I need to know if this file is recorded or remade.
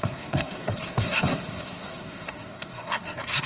remade